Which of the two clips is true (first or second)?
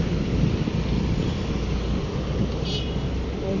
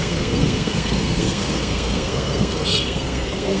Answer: first